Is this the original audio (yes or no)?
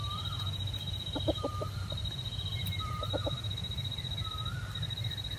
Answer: yes